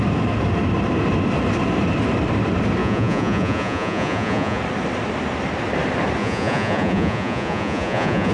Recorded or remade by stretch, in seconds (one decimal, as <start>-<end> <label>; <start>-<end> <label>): 0.0-2.8 recorded; 2.8-4.6 remade; 4.6-6.2 recorded; 6.2-8.3 remade